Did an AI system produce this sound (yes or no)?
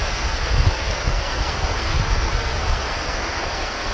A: yes